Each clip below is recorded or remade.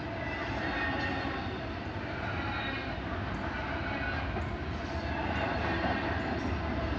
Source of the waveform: recorded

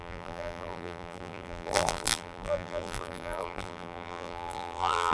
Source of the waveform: remade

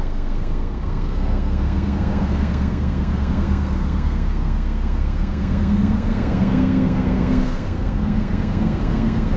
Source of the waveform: remade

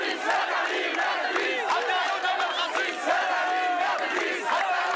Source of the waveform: recorded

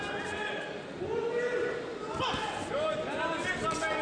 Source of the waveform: recorded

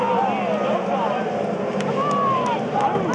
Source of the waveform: recorded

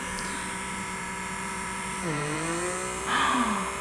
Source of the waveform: remade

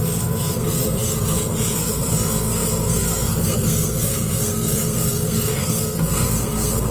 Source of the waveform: remade